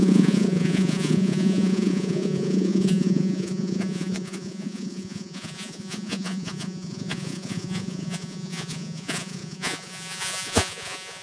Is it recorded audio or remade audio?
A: remade